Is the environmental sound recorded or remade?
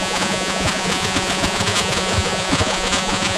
remade